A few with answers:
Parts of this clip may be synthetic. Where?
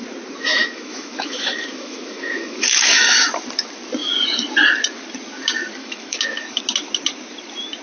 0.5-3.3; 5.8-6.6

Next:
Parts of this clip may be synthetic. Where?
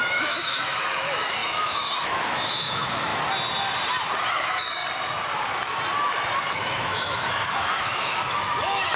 0.0-3.1; 4.3-4.8; 6.5-9.0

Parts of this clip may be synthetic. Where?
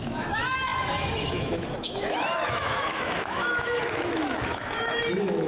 0.0-5.5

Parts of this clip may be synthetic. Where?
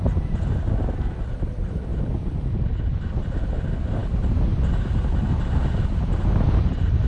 none